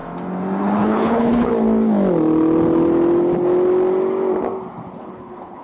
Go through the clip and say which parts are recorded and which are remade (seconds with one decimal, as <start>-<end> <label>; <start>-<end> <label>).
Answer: 0.0-0.6 recorded; 0.6-1.5 remade; 1.5-4.9 recorded; 4.9-5.6 remade